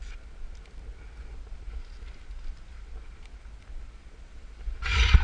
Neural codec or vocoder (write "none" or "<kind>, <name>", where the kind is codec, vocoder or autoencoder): none